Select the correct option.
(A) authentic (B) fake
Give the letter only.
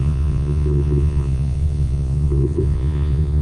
B